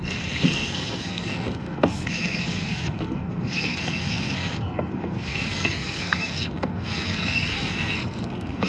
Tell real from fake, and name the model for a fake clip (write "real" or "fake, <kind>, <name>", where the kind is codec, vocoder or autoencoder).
fake, codec, SNAC